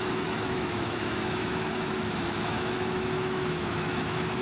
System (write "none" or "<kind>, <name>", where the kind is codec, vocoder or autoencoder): autoencoder, DAC-VAE